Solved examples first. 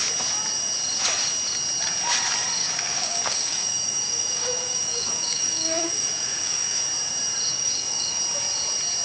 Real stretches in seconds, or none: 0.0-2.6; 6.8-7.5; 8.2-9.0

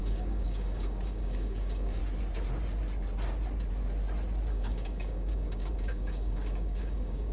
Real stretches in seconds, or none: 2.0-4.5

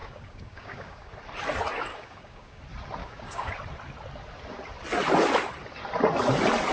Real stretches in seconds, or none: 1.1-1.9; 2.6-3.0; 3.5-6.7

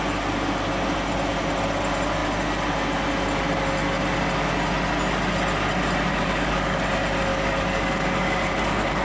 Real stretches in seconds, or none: 0.0-6.1; 6.8-7.3

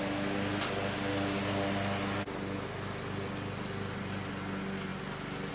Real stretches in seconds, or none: 0.0-5.5

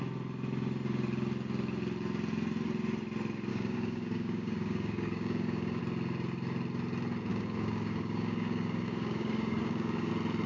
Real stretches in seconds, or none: 0.0-3.5; 5.8-7.3; 10.1-10.5